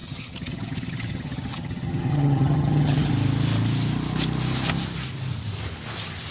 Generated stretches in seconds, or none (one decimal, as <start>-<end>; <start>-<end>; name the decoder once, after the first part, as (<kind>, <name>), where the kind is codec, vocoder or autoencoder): 0.0-3.1 (vocoder, HiFi-GAN)